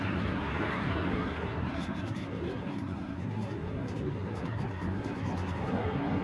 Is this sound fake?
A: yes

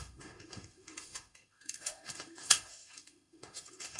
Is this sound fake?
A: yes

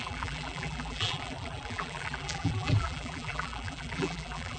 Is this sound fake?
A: yes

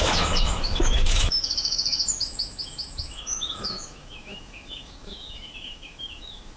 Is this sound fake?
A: yes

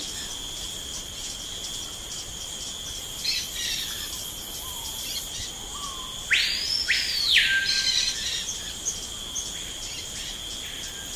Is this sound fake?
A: no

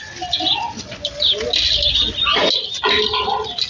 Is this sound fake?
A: no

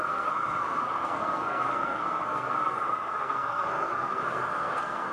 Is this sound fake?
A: yes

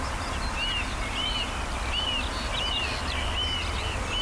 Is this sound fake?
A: no